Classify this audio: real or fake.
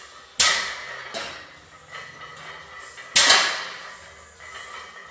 real